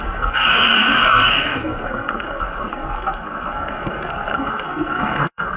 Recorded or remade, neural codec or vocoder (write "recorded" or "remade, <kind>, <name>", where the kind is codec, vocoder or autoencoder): remade, codec, SNAC